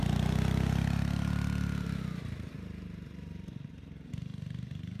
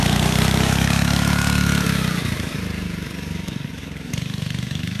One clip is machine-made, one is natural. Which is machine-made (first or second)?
second